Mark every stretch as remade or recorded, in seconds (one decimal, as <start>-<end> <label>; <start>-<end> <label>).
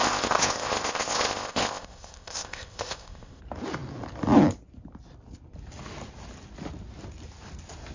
0.0-3.4 remade; 3.4-7.9 recorded